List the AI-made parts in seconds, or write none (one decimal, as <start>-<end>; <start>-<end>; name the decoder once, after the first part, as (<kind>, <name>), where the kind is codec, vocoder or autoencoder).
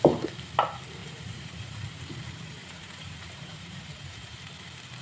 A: 1.0-2.0 (vocoder, Vocos); 2.6-4.5